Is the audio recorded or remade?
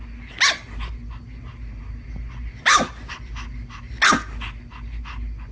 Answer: recorded